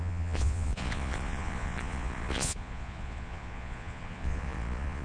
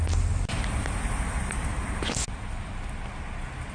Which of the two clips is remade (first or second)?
first